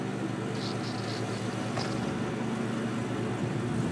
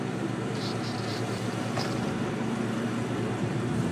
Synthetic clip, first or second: second